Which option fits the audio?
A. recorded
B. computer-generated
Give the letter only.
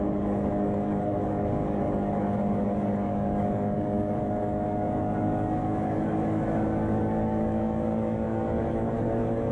B